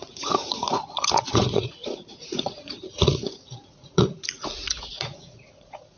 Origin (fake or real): fake